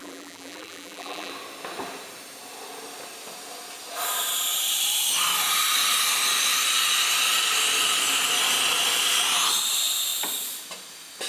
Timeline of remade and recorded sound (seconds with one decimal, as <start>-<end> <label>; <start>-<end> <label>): 0.0-1.3 remade; 1.3-11.3 recorded

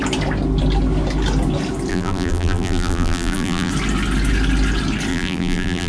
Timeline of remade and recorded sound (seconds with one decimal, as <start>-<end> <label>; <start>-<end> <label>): 0.0-1.9 recorded; 1.9-3.7 remade; 3.7-5.1 recorded; 5.1-5.9 remade

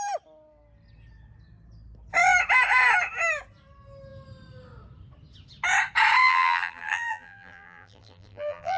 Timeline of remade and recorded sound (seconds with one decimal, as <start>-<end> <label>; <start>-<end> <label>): 0.0-6.2 recorded; 6.2-8.8 remade

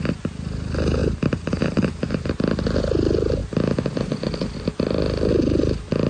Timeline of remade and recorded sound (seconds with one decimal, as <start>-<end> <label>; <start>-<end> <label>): 0.0-1.0 recorded; 1.0-2.3 remade; 2.3-6.1 recorded

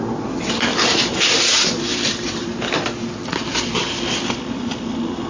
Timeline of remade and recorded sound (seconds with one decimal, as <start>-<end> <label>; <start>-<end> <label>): 0.0-0.7 recorded; 0.7-1.3 remade; 1.3-1.9 recorded; 1.9-2.6 remade; 2.6-5.3 recorded

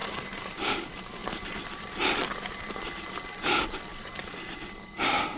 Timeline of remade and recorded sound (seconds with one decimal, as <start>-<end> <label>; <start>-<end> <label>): 0.0-0.6 remade; 0.6-1.2 recorded; 1.2-3.0 remade; 3.0-5.4 recorded